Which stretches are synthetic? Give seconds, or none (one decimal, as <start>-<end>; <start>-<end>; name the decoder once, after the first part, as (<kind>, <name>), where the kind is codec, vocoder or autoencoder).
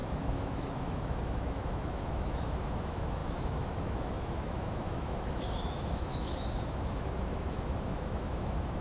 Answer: 0.0-8.8 (autoencoder, DAC-VAE)